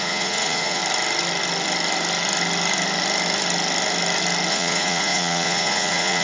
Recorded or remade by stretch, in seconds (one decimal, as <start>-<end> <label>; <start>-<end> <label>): 0.0-0.8 remade; 0.8-4.5 recorded; 4.5-6.2 remade